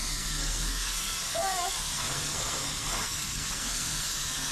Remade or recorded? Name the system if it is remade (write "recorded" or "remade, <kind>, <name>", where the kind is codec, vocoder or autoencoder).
remade, codec, SNAC